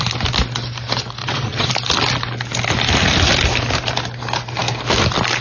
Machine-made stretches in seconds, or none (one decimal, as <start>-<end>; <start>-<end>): 1.2-1.7